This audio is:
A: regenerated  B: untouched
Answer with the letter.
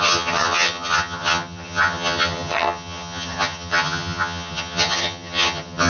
A